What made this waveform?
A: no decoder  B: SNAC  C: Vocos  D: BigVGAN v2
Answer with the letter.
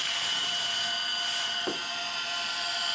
D